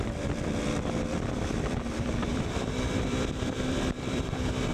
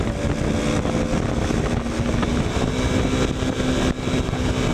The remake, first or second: first